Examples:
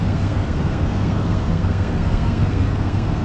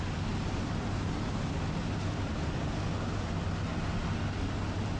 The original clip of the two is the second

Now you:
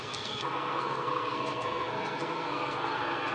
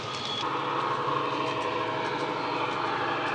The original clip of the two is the second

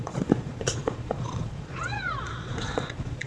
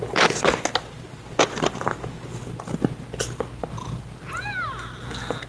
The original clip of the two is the second